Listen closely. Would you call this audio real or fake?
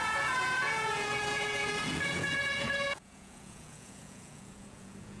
fake